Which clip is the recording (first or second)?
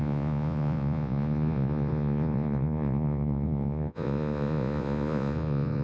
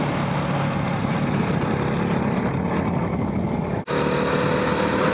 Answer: second